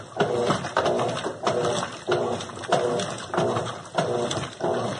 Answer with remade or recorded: recorded